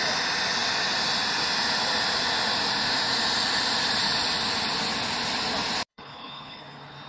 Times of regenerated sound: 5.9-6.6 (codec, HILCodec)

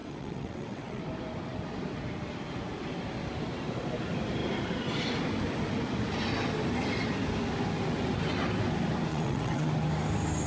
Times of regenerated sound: 0.0-1.0 (vocoder, WaveNeXt); 9.1-9.7

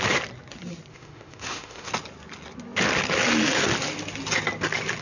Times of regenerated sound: 0.9-1.9 (autoencoder, DAC-VAE)

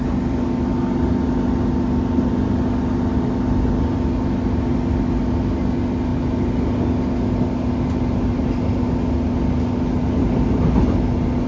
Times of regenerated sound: none

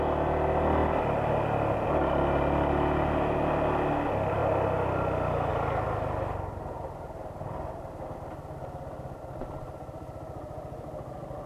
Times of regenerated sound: none

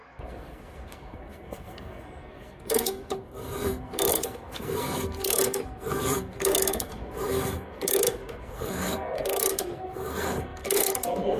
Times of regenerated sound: 0.0-11.4 (codec, SNAC)